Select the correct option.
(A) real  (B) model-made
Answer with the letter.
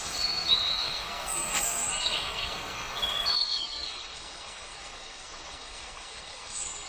B